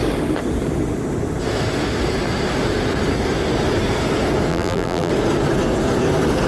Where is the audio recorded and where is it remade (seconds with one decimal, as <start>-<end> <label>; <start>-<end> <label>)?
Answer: 0.0-4.5 recorded; 4.5-5.1 remade; 5.1-6.5 recorded